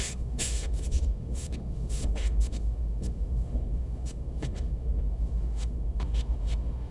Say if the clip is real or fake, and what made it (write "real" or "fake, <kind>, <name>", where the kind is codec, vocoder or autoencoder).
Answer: fake, autoencoder, DAC-VAE